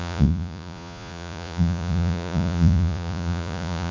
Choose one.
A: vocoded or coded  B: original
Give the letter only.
A